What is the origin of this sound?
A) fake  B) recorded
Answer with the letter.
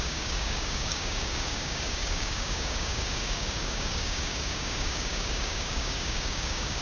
A